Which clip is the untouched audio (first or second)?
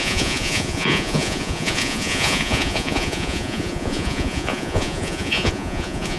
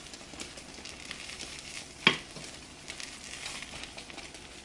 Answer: second